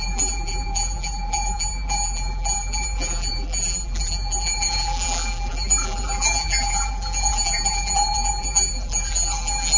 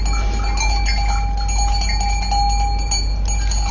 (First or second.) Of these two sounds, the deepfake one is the first